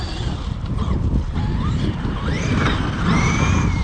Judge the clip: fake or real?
real